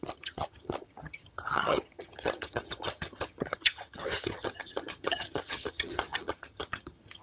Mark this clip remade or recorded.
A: remade